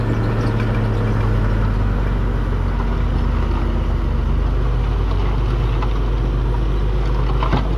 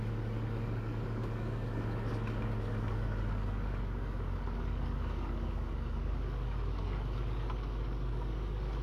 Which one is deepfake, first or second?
second